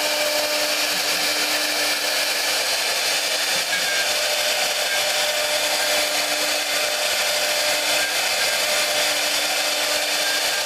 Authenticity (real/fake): real